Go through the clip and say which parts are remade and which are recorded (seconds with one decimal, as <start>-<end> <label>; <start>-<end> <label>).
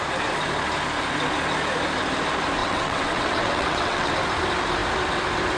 0.0-2.6 recorded; 2.6-4.1 remade; 4.1-5.6 recorded